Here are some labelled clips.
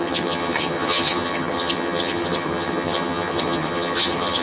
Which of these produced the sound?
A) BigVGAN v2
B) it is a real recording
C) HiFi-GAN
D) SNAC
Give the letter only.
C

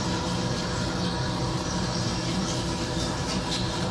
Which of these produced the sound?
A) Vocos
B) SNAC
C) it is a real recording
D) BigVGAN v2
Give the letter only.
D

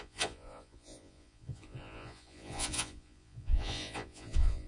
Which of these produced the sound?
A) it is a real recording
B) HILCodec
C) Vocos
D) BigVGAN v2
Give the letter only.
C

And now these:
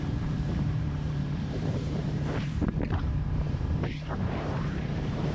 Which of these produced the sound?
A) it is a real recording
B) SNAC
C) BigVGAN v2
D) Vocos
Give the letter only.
C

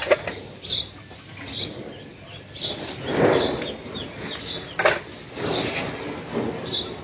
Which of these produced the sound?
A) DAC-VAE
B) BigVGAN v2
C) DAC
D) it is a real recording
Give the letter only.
D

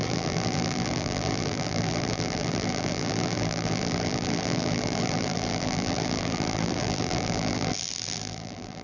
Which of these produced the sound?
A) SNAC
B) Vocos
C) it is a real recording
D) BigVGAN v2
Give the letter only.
D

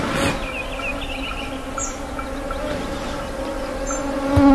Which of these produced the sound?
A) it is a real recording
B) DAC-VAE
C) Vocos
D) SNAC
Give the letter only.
A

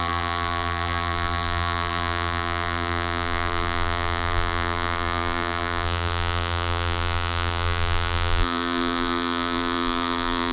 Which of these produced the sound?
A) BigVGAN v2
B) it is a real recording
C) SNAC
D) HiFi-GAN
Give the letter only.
A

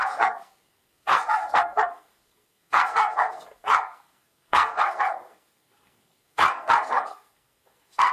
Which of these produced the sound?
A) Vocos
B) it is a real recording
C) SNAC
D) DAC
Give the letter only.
C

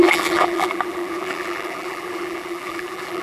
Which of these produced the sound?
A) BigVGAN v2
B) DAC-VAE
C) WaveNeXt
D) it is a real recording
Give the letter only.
A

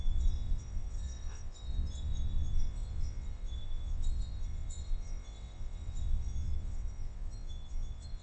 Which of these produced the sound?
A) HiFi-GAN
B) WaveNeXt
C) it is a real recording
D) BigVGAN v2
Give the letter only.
B